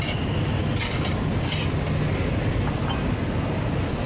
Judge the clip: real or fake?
real